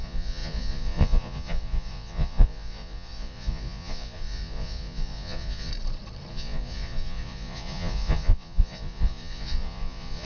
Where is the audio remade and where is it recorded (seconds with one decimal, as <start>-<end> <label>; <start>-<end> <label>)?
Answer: 0.0-5.7 remade; 5.7-6.3 recorded; 6.3-10.2 remade